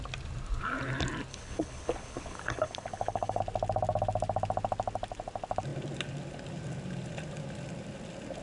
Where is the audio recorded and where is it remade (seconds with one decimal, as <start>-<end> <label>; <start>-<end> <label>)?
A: 0.0-1.3 recorded; 1.3-3.4 remade; 3.4-8.4 recorded